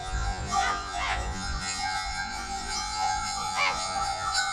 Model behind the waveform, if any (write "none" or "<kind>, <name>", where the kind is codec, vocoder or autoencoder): vocoder, Vocos